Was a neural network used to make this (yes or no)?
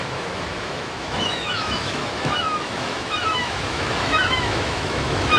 yes